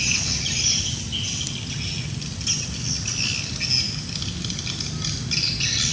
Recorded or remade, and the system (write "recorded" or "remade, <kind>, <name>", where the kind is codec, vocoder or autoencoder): recorded